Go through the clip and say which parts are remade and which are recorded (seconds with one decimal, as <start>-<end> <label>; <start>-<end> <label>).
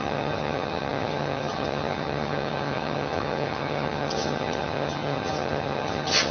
0.0-6.3 remade